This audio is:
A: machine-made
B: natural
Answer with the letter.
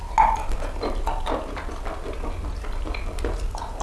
B